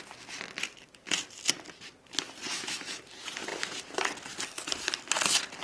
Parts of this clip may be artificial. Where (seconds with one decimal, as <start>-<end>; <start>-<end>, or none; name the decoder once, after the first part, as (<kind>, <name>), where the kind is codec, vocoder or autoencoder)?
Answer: 2.5-3.0 (autoencoder, DAC-VAE)